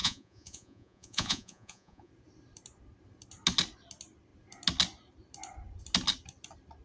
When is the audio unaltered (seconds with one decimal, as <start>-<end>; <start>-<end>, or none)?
2.1-6.8